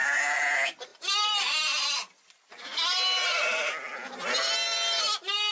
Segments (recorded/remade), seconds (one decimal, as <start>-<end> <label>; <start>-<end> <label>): 0.0-5.5 recorded